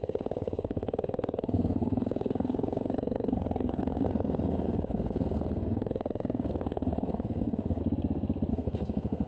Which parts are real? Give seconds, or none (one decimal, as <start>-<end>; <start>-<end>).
7.8-8.5